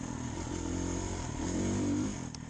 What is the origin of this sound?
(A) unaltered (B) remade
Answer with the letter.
B